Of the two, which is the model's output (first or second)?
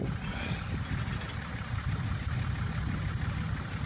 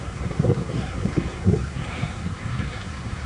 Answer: second